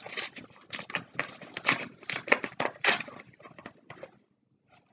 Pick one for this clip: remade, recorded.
recorded